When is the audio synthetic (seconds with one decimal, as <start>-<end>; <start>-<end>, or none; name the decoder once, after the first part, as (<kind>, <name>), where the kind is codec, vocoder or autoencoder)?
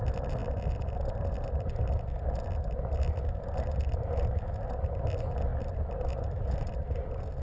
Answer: none